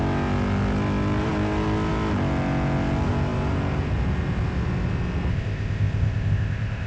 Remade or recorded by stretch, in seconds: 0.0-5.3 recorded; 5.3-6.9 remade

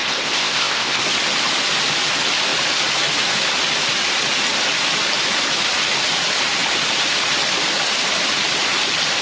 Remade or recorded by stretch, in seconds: 0.0-1.0 remade; 1.0-9.2 recorded

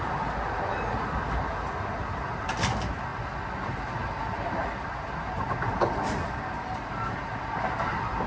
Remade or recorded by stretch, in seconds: 0.0-8.3 recorded

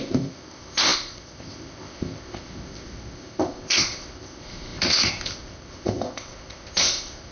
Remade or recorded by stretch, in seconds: 0.0-7.3 remade